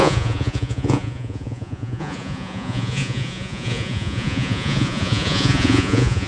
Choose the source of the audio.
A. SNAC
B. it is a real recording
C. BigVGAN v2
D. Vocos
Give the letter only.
D